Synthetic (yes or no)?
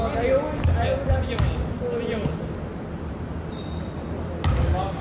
no